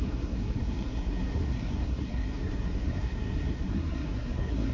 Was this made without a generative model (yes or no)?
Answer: no